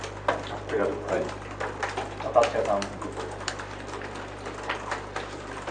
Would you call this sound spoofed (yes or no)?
yes